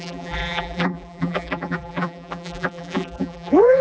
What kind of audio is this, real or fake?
fake